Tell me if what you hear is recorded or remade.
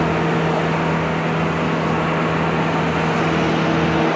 recorded